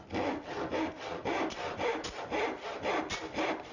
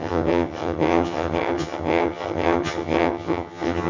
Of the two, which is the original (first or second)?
first